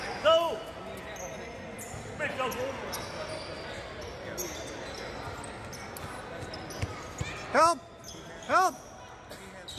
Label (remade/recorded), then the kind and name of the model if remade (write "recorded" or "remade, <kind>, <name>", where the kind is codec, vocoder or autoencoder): recorded